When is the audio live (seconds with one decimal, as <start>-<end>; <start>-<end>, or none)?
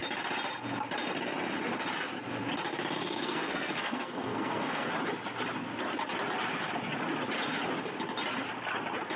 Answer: 0.0-3.0; 4.9-9.2